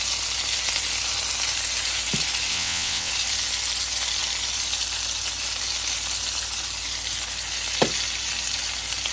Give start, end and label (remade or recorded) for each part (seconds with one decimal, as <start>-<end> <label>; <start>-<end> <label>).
0.0-2.5 recorded; 2.5-3.1 remade; 3.1-9.1 recorded